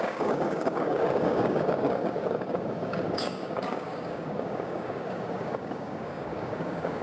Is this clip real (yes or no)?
no